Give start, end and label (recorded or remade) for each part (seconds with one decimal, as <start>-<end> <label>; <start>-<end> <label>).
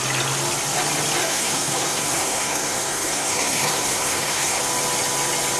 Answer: 0.0-1.2 recorded; 1.2-4.6 remade; 4.6-5.6 recorded